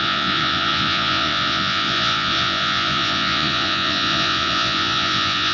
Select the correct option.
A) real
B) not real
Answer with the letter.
B